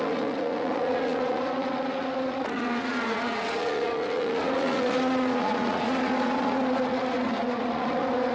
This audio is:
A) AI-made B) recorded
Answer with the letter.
A